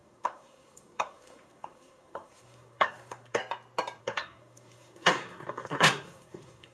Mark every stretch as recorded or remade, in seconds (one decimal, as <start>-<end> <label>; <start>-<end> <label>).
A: 0.0-3.4 remade; 3.4-4.0 recorded; 4.0-6.7 remade